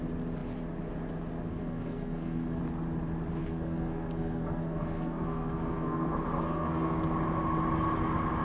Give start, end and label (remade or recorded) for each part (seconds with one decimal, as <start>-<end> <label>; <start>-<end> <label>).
0.0-1.5 recorded; 1.5-2.6 remade; 2.6-3.4 recorded; 3.4-7.0 remade; 7.0-8.4 recorded